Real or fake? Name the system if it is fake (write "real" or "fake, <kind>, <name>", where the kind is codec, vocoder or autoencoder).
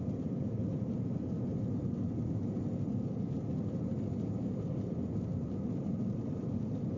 real